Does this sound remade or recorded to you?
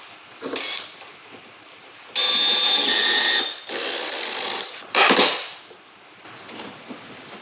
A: recorded